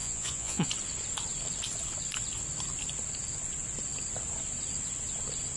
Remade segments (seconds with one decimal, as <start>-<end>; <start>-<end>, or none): 0.0-0.7